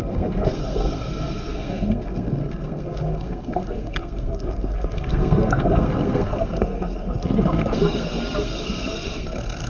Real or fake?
fake